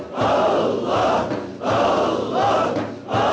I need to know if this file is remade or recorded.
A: recorded